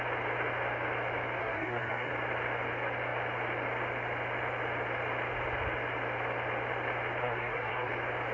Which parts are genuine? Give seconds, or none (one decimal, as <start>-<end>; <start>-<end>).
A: 0.0-1.4; 2.1-7.2; 7.9-8.3

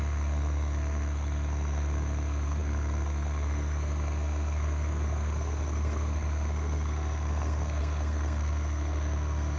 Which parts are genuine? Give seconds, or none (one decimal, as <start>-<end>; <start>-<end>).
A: none

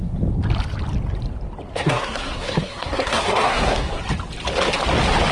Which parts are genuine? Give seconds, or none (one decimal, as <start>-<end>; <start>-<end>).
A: 0.0-1.7; 4.0-5.3

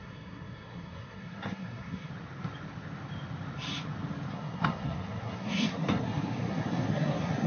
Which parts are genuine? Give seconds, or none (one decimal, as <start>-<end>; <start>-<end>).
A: 2.1-4.3

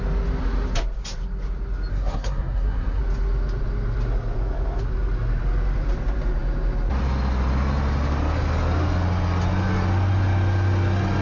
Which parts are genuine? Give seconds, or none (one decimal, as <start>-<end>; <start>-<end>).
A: 0.0-1.9; 3.0-11.2

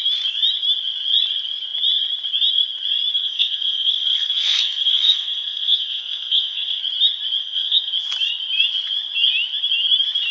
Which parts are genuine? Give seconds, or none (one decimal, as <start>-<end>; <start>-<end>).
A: 0.0-3.1; 6.8-7.4; 7.9-10.3